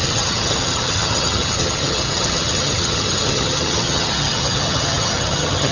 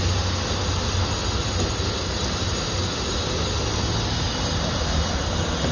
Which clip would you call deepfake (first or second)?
first